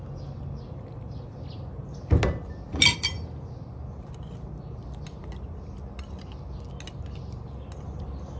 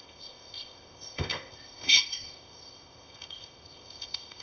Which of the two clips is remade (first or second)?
second